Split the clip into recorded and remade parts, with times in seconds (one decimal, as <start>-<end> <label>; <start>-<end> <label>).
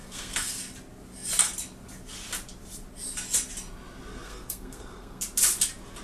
0.0-0.6 remade; 0.6-4.1 recorded; 4.1-5.2 remade; 5.2-6.0 recorded